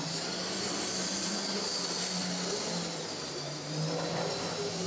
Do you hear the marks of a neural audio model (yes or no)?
no